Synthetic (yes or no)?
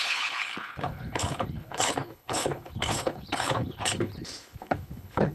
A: yes